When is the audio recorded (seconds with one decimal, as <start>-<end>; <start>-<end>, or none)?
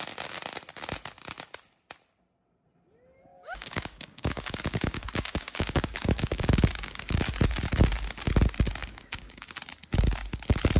0.0-3.3; 7.2-8.8; 9.5-10.8